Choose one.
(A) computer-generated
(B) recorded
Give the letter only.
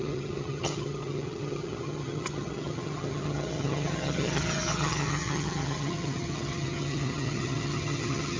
A